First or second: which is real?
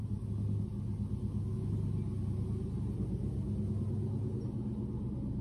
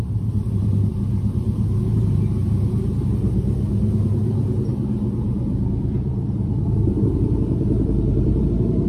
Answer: first